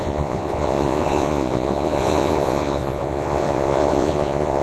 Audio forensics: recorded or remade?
remade